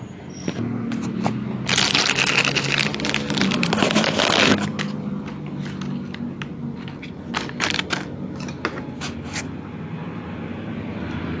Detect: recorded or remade recorded